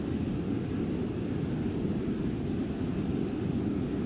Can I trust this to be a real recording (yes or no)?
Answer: yes